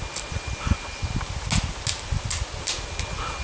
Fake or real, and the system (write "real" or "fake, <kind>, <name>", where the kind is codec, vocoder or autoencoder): real